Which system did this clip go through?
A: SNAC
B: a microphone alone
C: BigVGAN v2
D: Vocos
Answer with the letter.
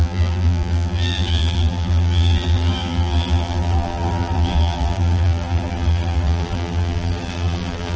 C